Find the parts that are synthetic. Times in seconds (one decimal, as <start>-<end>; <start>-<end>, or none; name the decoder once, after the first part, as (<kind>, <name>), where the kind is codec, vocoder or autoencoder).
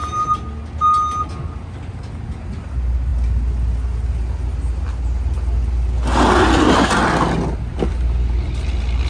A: none